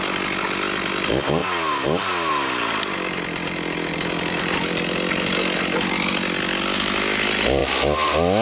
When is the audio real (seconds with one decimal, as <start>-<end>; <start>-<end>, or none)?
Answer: 0.0-8.4

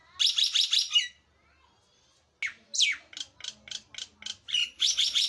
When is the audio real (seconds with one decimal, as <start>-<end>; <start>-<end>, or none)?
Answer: 0.0-4.6

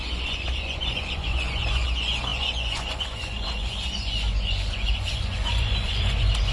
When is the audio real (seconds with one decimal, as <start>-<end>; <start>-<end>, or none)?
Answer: none

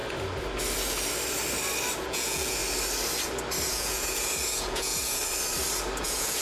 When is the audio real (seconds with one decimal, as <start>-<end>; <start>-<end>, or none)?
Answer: 0.0-2.0; 2.6-3.7; 5.2-6.0

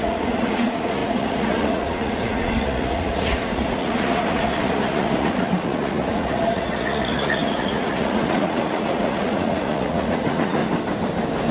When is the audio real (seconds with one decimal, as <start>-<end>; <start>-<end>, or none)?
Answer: 10.6-11.5

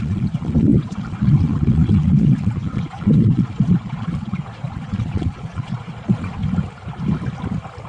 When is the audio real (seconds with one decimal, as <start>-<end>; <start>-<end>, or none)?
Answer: 6.4-7.9

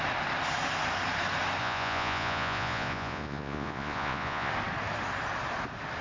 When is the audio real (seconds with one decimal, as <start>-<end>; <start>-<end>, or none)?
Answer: 0.0-1.6; 4.5-6.0

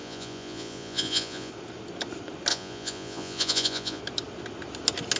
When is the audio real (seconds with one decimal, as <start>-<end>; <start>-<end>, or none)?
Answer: 1.5-2.5; 4.0-5.2